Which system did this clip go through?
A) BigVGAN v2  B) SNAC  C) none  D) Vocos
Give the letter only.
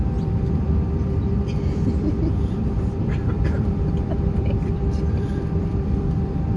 A